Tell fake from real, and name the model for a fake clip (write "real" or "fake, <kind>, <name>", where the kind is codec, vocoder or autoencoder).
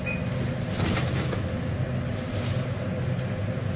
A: real